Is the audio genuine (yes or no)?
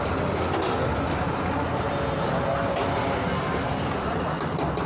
yes